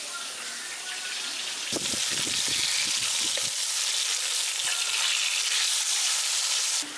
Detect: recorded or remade recorded